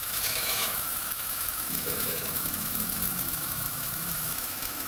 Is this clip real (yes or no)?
no